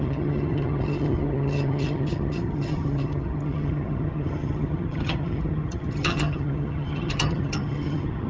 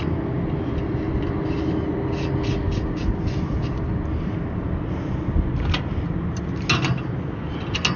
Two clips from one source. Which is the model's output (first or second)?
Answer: first